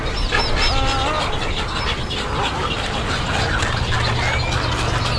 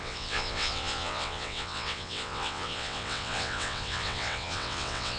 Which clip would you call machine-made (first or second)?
second